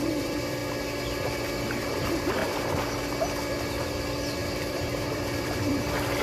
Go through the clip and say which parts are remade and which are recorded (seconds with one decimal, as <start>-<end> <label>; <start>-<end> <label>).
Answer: 0.0-0.6 remade; 0.6-1.7 recorded; 1.7-2.4 remade; 2.4-3.8 recorded; 3.8-6.2 remade